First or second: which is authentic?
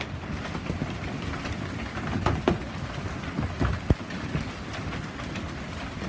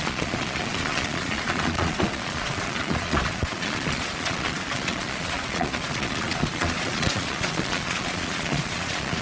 first